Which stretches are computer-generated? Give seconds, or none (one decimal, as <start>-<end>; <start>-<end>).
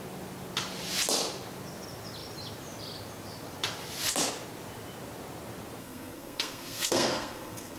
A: 5.8-7.8